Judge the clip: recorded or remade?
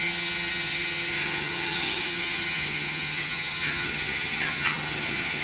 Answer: remade